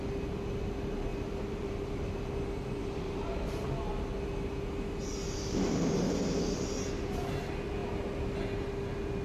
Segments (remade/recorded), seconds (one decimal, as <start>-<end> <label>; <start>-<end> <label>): 0.0-1.1 recorded; 1.1-2.1 remade; 2.1-2.8 recorded; 2.8-3.9 remade; 3.9-5.2 recorded; 5.2-5.9 remade; 5.9-9.2 recorded